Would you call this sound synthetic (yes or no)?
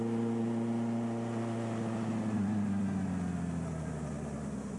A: no